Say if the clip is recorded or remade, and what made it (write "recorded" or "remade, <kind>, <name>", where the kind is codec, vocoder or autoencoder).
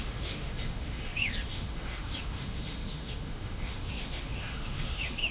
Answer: remade, autoencoder, DAC-VAE